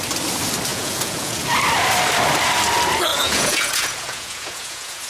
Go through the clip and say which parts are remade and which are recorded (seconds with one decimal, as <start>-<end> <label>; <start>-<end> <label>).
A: 0.0-0.7 recorded; 0.7-1.4 remade; 1.4-3.1 recorded; 3.1-5.1 remade